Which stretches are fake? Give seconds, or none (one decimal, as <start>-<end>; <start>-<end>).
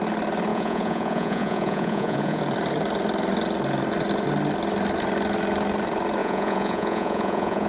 0.5-2.4; 6.2-7.7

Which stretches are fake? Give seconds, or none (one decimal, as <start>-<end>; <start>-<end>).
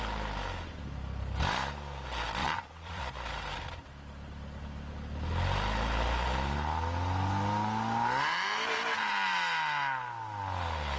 2.4-3.0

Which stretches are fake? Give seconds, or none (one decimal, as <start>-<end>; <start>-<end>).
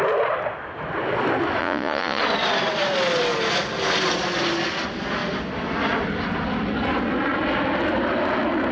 1.6-2.2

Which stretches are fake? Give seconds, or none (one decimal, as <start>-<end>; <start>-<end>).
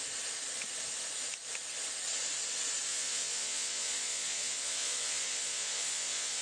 2.9-6.4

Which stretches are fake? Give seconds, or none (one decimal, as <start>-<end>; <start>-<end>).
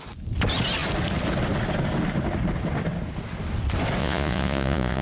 4.0-5.0